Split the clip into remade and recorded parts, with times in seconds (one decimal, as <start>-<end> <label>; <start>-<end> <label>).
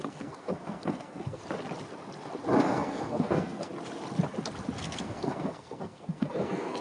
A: 0.0-1.4 remade; 1.4-2.6 recorded; 2.6-3.7 remade; 3.7-4.8 recorded; 4.8-6.8 remade